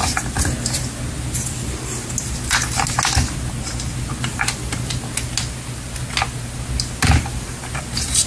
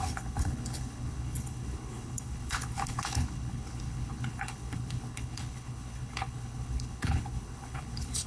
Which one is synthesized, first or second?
second